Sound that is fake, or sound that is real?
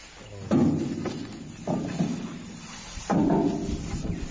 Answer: real